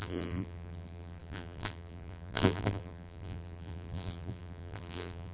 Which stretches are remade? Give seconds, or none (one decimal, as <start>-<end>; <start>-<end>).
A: 0.0-5.3